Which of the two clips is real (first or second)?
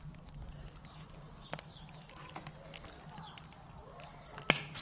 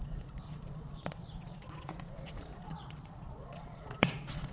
first